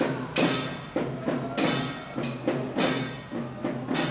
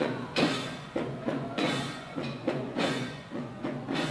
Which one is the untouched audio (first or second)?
first